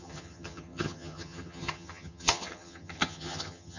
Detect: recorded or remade remade